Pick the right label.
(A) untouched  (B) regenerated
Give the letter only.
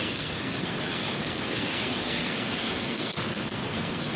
B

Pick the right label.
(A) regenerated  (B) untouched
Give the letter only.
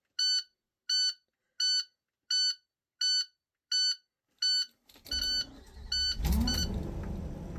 B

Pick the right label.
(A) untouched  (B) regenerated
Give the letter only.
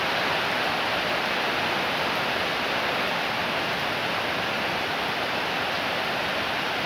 A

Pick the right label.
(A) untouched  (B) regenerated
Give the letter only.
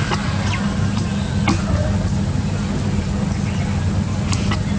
A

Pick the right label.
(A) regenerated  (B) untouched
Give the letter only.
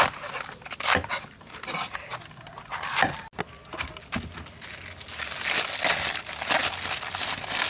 B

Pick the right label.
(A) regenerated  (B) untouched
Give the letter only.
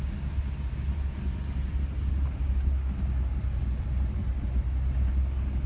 B